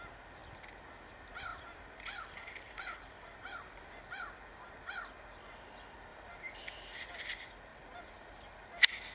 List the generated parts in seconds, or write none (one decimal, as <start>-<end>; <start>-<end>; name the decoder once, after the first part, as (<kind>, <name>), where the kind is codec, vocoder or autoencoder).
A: 1.5-3.9 (vocoder, BigVGAN v2); 6.1-7.3; 7.7-8.5